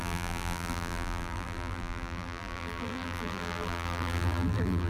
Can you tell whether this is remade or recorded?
remade